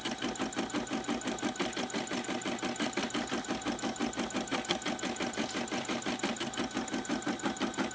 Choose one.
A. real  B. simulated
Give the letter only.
A